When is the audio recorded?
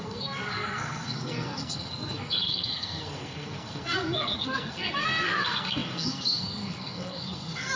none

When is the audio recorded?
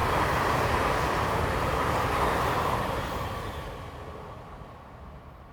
0.0-5.5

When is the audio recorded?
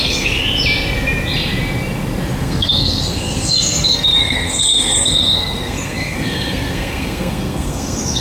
0.4-2.4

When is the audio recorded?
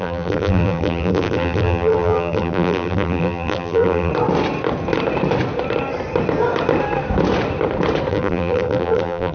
4.1-8.1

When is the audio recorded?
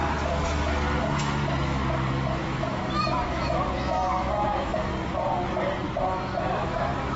0.0-1.0; 1.4-2.4; 4.9-6.6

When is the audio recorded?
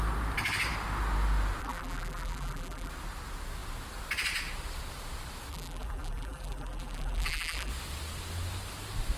0.0-1.6; 2.9-5.5; 7.7-9.2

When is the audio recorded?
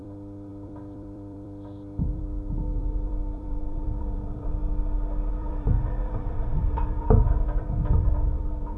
4.6-5.3